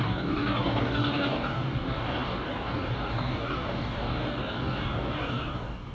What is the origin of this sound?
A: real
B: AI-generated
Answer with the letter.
B